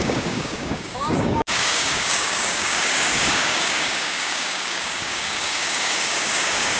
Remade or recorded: remade